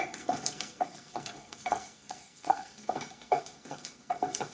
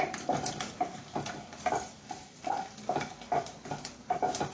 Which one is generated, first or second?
first